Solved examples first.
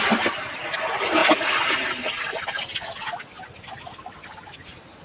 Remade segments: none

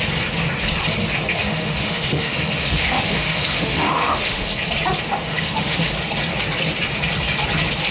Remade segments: 1.4-4.5 (autoencoder, DAC-VAE); 5.1-5.9

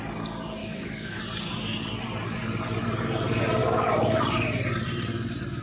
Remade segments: 0.6-1.2 (autoencoder, DAC-VAE); 3.6-4.2

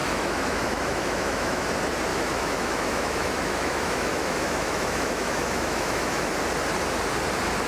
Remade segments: 0.0-1.7 (autoencoder, DAC-VAE); 2.1-6.3